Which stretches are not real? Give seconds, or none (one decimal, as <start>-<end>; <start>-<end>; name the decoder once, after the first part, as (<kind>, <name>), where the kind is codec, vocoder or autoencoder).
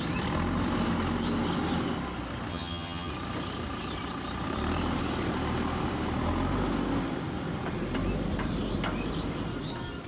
2.5-3.1 (vocoder, HiFi-GAN)